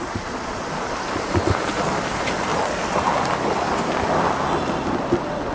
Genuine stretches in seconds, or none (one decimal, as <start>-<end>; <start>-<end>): 0.0-5.5